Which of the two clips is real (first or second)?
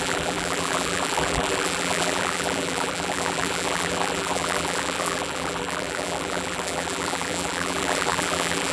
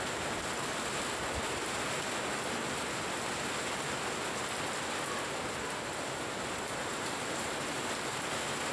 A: second